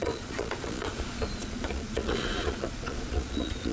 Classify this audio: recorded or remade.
remade